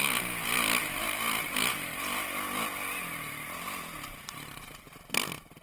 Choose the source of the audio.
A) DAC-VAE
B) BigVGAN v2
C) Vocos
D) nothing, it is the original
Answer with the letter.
D